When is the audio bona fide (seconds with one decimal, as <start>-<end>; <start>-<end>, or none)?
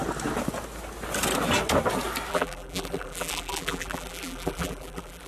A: 0.0-2.3